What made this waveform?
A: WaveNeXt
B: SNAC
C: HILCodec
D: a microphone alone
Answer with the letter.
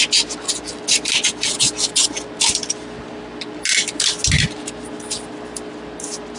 D